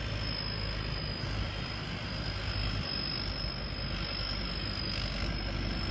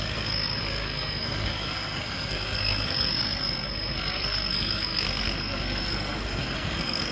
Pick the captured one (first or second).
first